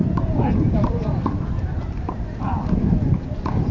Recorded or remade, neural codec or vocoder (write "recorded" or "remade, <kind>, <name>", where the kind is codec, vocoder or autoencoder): remade, vocoder, BigVGAN v2